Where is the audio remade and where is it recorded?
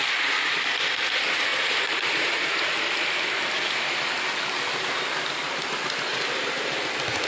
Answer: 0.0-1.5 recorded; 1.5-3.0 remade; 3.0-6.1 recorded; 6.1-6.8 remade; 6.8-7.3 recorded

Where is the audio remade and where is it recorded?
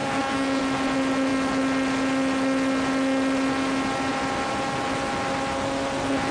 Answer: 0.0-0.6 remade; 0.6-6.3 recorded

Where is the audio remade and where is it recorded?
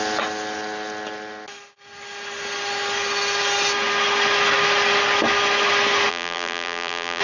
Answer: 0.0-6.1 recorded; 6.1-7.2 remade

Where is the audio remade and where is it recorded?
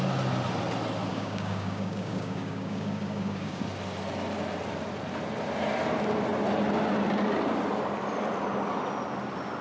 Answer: 0.0-1.1 recorded; 1.1-3.6 remade; 3.6-9.6 recorded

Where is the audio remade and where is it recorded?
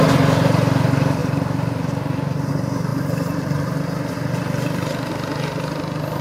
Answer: 0.0-6.2 recorded